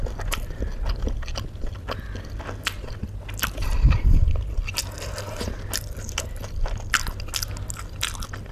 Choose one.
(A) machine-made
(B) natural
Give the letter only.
B